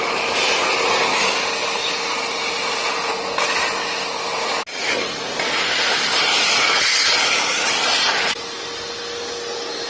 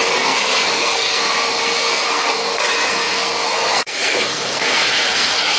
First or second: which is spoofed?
second